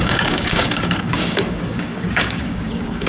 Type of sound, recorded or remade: remade